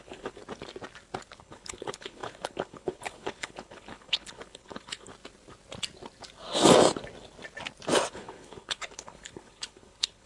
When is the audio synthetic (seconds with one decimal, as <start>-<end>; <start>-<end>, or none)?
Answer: 0.0-0.4; 1.4-5.1; 8.1-10.3